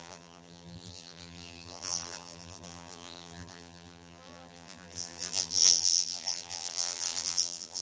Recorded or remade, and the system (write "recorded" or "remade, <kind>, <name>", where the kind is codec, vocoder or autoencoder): remade, vocoder, BigVGAN v2